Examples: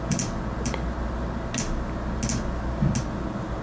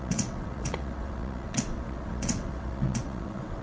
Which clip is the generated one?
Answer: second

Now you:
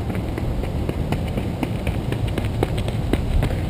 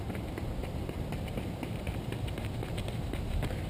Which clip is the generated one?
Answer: second